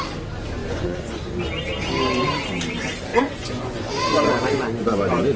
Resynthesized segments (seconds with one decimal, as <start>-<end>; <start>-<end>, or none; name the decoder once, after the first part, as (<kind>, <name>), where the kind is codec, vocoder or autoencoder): 0.6-1.3 (vocoder, Vocos); 3.1-4.0